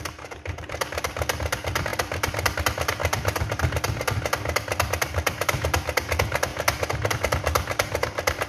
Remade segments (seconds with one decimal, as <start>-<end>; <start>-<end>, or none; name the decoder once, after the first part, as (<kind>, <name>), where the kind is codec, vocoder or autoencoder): 0.0-6.5 (vocoder, BigVGAN v2); 7.1-8.5